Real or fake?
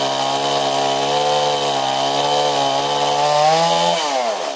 real